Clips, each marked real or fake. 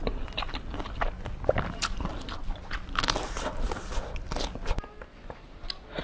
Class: real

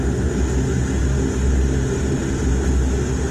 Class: real